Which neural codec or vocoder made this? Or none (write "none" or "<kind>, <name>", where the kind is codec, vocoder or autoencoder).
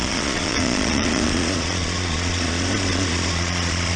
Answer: vocoder, Vocos